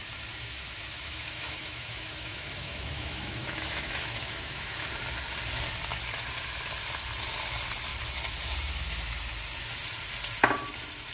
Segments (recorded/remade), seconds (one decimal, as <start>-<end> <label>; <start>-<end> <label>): 0.0-0.9 recorded; 0.9-4.9 remade; 4.9-11.1 recorded